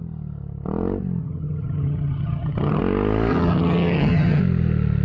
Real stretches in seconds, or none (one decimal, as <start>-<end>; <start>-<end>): 0.0-1.2; 2.8-3.3; 4.4-5.0